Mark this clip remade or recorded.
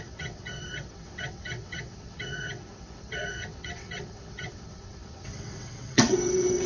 remade